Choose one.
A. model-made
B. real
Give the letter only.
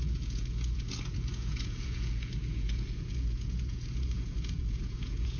A